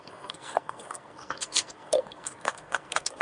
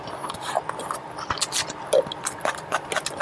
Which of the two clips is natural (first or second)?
second